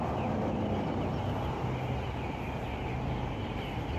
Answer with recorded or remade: recorded